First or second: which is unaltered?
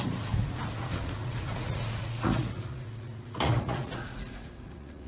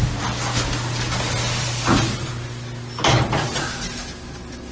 second